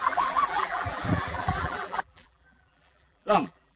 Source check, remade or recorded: remade